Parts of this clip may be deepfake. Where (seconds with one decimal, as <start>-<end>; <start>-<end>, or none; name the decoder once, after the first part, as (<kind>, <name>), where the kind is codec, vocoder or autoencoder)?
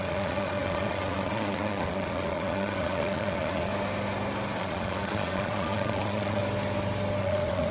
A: 0.0-3.7 (vocoder, Vocos); 4.6-6.4; 7.2-7.7